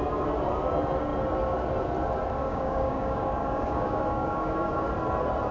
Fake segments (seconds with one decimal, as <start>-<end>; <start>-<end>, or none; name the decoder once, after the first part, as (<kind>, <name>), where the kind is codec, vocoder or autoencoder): 2.4-4.9 (codec, DAC)